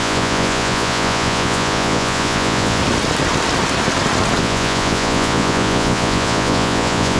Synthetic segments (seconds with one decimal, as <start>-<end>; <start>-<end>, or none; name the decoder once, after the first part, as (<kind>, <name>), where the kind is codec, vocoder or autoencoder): 0.0-2.8 (vocoder, Vocos); 4.4-7.2